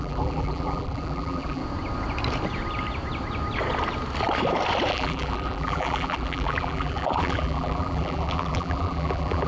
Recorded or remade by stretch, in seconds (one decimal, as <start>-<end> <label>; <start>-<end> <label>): 0.0-1.6 remade; 1.6-4.9 recorded; 4.9-9.5 remade